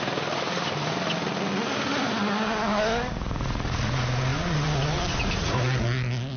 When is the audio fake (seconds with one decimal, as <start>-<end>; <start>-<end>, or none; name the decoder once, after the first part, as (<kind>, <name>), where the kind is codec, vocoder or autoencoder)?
2.2-3.1 (codec, DAC)